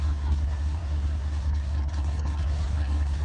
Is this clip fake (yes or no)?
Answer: yes